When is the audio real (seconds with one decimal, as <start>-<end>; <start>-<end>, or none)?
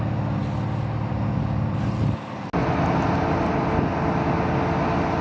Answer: 0.0-5.2